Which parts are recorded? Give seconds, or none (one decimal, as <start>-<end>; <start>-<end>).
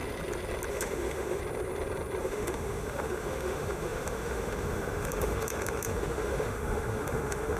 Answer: 0.0-0.7; 1.4-2.2